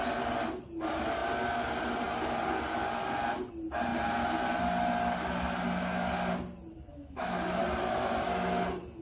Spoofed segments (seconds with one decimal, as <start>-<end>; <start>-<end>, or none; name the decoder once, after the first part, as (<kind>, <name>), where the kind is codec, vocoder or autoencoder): 6.9-7.6 (autoencoder, DAC-VAE)